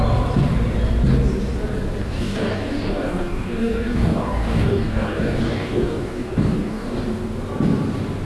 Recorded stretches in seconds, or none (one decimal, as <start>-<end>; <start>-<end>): 0.0-2.0; 7.0-8.3